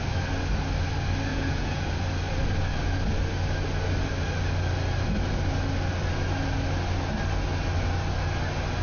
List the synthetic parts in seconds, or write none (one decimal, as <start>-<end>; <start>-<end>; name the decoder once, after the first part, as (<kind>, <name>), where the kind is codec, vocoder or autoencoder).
1.3-1.9 (vocoder, Vocos)